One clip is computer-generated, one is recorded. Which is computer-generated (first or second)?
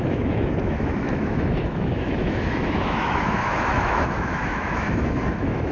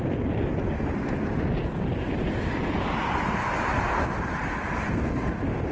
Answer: first